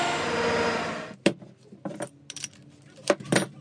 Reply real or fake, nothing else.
real